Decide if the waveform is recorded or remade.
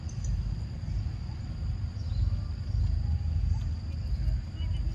recorded